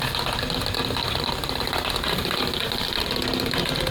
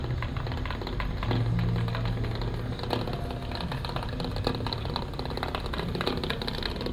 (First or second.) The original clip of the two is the second